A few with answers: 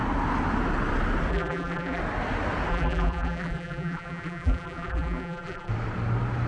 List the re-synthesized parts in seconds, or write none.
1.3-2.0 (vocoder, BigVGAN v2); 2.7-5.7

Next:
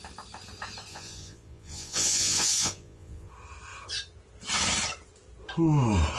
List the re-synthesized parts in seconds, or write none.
0.9-3.3 (vocoder, Vocos)

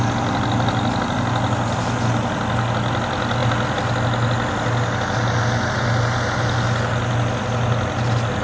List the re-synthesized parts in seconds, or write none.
none

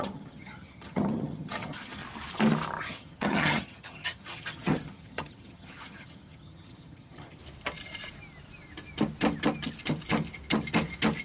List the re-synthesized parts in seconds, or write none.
0.0-2.0 (vocoder, HiFi-GAN); 2.8-7.4

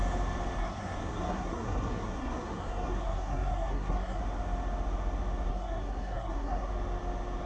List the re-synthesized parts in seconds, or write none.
0.6-4.2 (codec, SNAC); 5.5-6.7

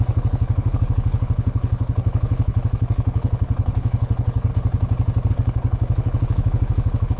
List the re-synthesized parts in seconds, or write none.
0.0-4.5 (codec, HILCodec); 5.3-7.2

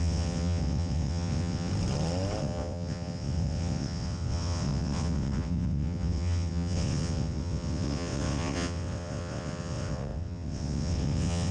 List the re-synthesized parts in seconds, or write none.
0.0-1.7 (vocoder, WaveNeXt); 2.4-11.5

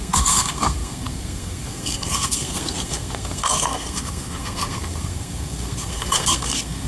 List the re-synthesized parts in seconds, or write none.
0.0-6.9 (codec, SNAC)